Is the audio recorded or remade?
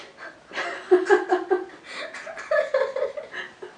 recorded